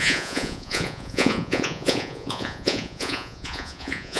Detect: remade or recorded remade